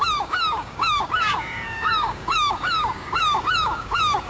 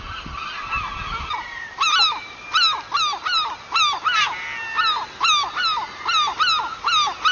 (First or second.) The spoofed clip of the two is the first